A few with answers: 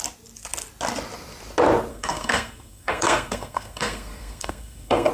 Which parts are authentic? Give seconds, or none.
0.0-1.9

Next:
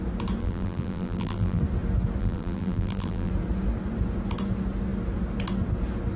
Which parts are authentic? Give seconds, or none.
0.0-0.4; 1.6-2.2; 3.3-6.2